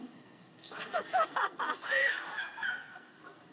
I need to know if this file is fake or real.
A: fake